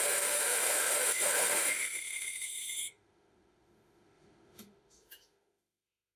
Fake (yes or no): yes